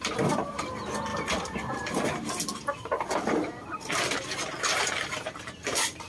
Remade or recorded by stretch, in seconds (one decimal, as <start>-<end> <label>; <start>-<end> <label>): 0.0-6.1 recorded